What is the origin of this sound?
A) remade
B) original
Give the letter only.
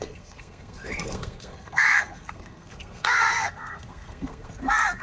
A